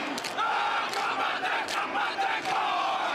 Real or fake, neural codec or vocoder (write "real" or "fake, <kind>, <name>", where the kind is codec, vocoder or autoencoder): real